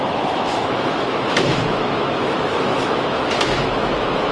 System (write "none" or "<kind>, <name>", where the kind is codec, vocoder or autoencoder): autoencoder, DAC-VAE